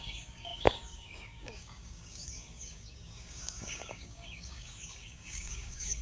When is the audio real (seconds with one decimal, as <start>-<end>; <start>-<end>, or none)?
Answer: none